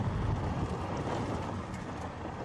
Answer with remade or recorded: recorded